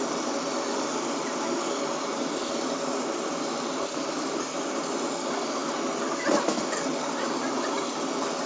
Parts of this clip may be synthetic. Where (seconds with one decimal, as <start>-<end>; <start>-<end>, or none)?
none